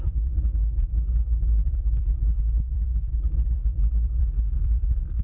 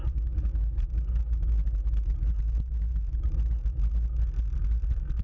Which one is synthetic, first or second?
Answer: first